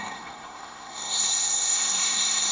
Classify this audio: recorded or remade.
remade